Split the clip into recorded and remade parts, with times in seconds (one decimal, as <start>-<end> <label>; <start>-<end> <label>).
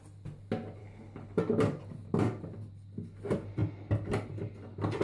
0.0-0.8 recorded; 0.8-1.4 remade; 1.4-5.0 recorded